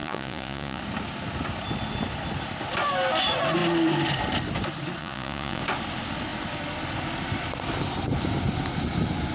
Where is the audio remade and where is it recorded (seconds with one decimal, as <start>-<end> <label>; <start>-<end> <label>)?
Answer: 0.0-0.8 remade; 0.8-5.0 recorded; 5.0-5.6 remade; 5.6-9.3 recorded